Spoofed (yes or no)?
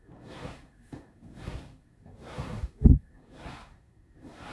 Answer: yes